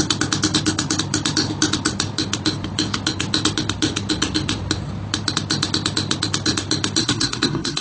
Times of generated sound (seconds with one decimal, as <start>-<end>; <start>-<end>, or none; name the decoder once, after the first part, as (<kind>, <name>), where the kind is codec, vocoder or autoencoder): 7.0-7.8 (codec, SNAC)